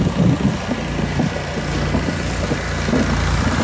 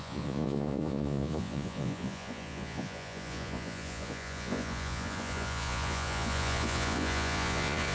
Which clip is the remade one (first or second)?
second